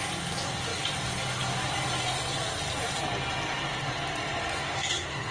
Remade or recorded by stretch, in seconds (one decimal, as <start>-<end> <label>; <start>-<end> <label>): 0.0-4.5 recorded; 4.5-5.3 remade